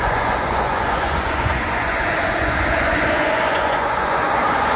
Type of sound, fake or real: fake